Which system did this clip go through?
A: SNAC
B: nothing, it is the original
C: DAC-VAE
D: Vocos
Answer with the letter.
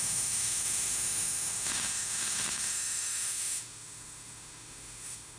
C